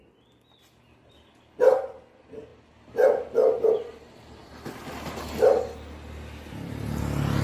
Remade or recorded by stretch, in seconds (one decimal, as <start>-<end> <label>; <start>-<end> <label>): 0.0-7.4 recorded